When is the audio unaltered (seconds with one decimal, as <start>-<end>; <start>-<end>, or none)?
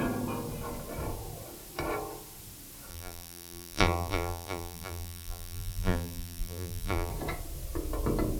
0.0-2.9; 7.1-8.4